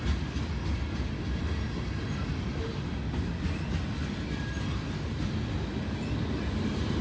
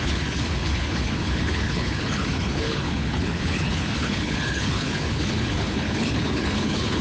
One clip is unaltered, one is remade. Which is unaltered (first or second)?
first